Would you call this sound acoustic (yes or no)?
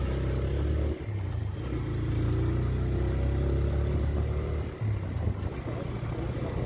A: yes